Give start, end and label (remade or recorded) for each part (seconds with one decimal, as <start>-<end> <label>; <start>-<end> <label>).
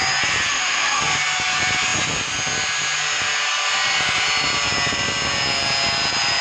0.0-0.5 recorded; 0.5-1.0 remade; 1.0-6.4 recorded